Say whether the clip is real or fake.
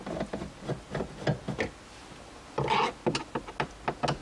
real